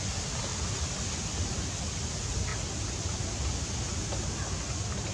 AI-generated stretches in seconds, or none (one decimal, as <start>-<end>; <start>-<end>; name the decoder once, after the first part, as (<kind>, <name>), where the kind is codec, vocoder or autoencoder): none